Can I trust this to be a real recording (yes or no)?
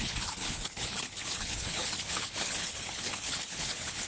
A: no